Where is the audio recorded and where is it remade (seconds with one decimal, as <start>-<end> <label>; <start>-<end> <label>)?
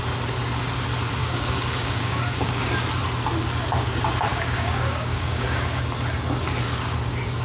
0.0-1.2 recorded; 1.2-2.7 remade; 2.7-4.3 recorded; 4.3-5.8 remade; 5.8-7.4 recorded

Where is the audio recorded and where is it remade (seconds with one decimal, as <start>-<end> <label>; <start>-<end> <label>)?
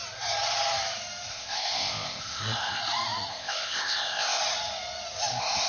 0.0-1.3 recorded; 1.3-2.8 remade; 2.8-3.3 recorded; 3.3-4.4 remade; 4.4-5.3 recorded; 5.3-5.7 remade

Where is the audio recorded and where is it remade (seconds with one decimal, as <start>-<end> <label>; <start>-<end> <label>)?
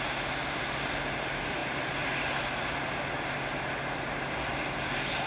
0.0-5.3 recorded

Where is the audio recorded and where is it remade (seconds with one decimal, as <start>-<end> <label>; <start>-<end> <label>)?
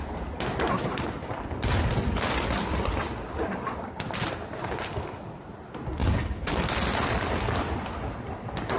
0.0-8.8 recorded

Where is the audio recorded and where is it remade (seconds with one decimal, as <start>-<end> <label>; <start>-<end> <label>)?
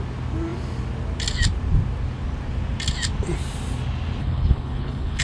0.0-4.2 recorded; 4.2-5.2 remade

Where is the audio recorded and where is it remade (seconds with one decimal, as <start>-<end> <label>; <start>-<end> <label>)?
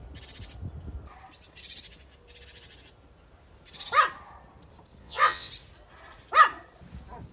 0.0-5.0 recorded; 5.0-5.5 remade; 5.5-7.3 recorded